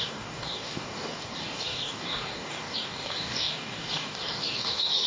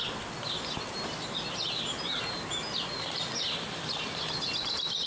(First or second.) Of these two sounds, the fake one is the first